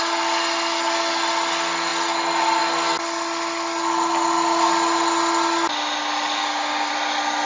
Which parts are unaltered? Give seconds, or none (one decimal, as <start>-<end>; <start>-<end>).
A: 0.0-6.4; 6.9-7.5